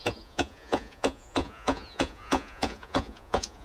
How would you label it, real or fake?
fake